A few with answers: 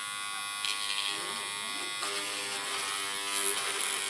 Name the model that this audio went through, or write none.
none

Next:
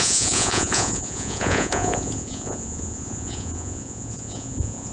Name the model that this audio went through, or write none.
vocoder, Vocos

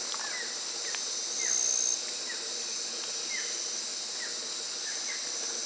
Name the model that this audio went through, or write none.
none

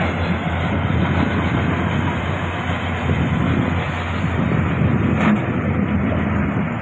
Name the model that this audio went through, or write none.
none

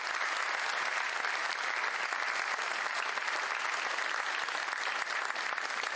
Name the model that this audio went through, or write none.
none